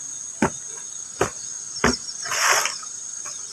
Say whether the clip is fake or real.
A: real